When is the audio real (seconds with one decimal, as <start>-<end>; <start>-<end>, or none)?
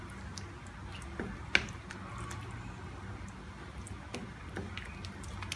0.0-5.6